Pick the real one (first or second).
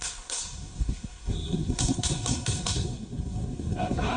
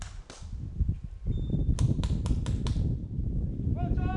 second